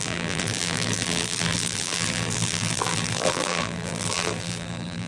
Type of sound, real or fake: fake